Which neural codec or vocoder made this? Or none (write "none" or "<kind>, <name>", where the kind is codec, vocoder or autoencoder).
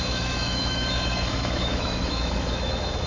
autoencoder, DAC-VAE